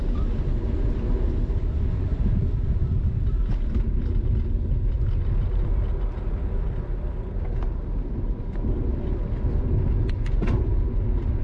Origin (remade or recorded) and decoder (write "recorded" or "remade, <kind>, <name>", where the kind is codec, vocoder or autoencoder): recorded